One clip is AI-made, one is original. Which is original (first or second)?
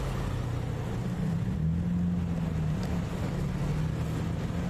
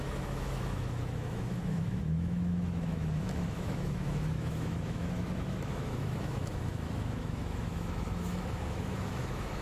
first